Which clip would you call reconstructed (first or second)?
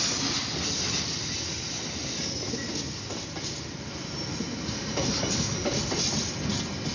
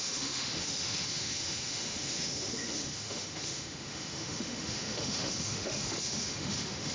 second